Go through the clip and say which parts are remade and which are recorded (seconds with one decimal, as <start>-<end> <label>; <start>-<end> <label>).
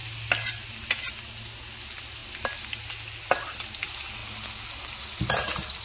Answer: 0.0-5.8 recorded